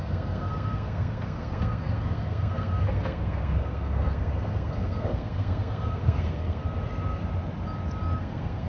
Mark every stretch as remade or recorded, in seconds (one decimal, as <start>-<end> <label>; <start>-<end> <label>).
0.0-6.6 remade; 6.6-8.2 recorded; 8.2-8.7 remade